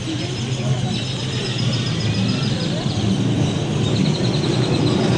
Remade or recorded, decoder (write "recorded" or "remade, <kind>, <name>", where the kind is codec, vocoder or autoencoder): recorded